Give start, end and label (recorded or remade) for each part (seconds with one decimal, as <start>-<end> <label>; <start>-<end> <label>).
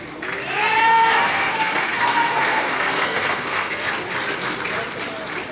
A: 0.0-0.6 recorded; 0.6-3.9 remade; 3.9-5.5 recorded